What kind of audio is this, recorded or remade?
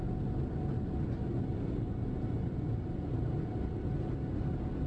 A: recorded